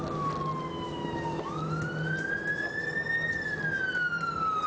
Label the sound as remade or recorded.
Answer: recorded